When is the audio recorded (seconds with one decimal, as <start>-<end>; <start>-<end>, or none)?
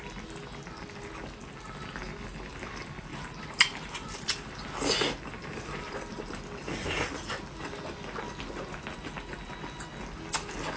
0.0-3.1; 4.2-10.8